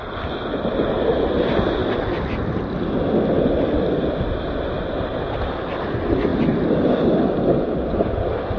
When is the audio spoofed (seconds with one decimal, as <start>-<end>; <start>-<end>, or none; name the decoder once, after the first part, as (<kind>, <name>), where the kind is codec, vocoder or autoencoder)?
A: none